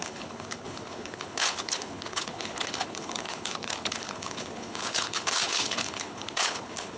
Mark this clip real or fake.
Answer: fake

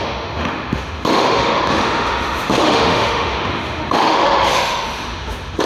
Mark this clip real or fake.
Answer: fake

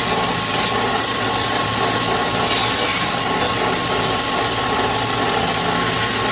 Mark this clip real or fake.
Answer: real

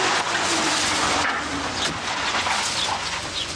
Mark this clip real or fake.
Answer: fake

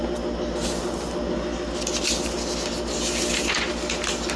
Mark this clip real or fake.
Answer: real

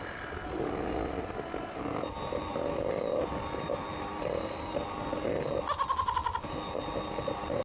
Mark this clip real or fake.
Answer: real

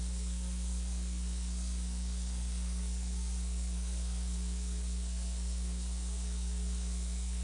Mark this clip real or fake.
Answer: fake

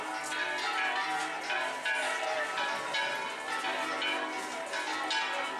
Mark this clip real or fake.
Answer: real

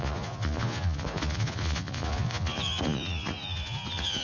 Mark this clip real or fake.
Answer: fake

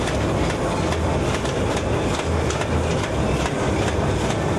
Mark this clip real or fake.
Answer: real